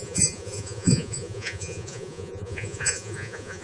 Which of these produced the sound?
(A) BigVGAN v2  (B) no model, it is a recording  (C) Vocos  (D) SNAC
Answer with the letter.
C